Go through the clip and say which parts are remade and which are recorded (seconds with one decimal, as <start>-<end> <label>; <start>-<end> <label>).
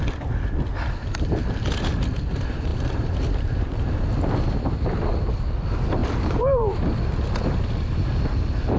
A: 0.0-2.7 recorded; 2.7-3.9 remade; 3.9-6.0 recorded; 6.0-6.8 remade; 6.8-8.8 recorded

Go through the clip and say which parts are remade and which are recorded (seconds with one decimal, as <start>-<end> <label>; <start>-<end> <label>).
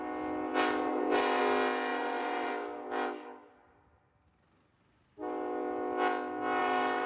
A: 0.0-0.5 recorded; 0.5-1.4 remade; 1.4-1.9 recorded; 1.9-2.5 remade; 2.5-6.6 recorded; 6.6-7.1 remade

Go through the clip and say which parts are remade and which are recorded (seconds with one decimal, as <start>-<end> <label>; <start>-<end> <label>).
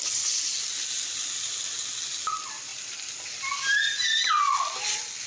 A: 0.0-2.7 recorded; 2.7-3.2 remade; 3.2-5.3 recorded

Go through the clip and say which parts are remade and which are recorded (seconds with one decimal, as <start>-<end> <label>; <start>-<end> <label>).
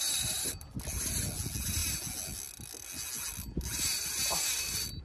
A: 0.0-5.0 recorded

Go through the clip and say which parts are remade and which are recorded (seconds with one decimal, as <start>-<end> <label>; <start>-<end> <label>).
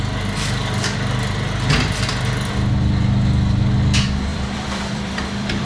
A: 0.0-4.3 recorded; 4.3-5.7 remade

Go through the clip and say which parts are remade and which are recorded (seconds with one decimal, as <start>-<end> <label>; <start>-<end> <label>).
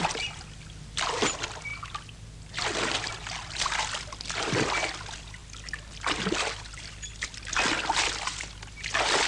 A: 0.0-9.3 recorded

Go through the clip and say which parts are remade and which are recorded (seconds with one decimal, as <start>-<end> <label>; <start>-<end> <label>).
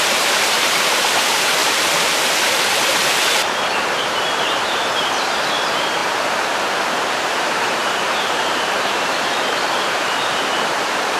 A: 0.0-1.6 remade; 1.6-4.3 recorded; 4.3-6.0 remade; 6.0-7.1 recorded; 7.1-11.2 remade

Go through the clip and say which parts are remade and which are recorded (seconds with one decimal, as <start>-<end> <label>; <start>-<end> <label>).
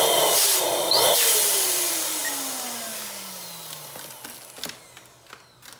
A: 0.0-2.2 remade; 2.2-5.8 recorded